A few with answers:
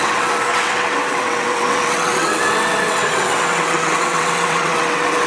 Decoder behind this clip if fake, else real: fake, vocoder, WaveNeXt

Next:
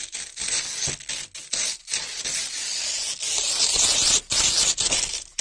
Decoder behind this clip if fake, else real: real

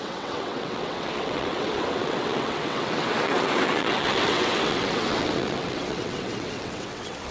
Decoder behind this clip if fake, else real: fake, vocoder, WaveNeXt